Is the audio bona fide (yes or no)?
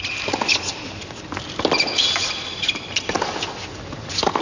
yes